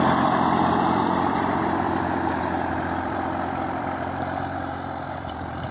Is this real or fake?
fake